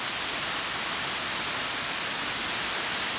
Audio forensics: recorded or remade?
recorded